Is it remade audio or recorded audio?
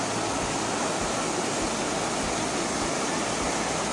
recorded